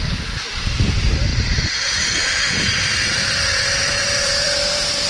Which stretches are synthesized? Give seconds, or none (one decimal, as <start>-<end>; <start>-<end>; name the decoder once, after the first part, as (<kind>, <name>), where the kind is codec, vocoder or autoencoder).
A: 0.0-5.1 (vocoder, BigVGAN v2)